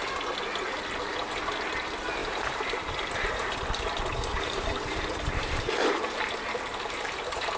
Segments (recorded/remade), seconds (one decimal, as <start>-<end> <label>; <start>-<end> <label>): 0.0-2.2 recorded; 2.2-6.2 remade; 6.2-7.6 recorded